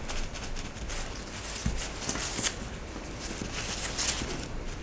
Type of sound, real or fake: real